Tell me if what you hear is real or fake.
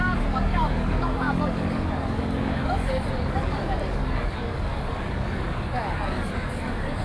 fake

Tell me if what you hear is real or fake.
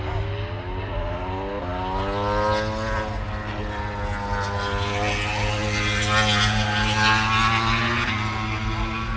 real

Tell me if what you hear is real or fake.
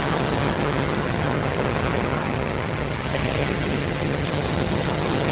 fake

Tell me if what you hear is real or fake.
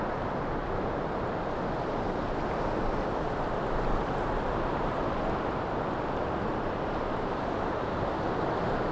real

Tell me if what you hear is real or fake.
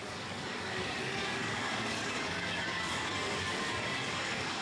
fake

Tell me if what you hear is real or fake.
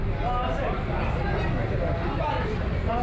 real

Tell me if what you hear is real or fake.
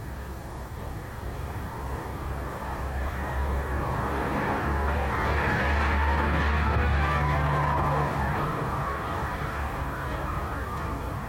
fake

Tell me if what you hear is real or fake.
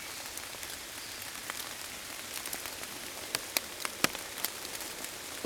real